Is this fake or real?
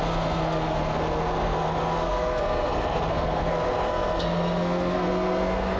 fake